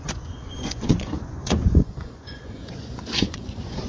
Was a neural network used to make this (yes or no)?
yes